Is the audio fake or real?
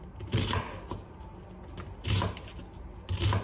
real